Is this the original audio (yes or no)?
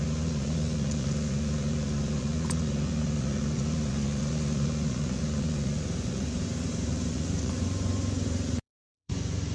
no